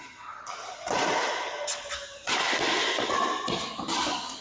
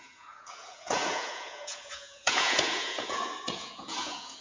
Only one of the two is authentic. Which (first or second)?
first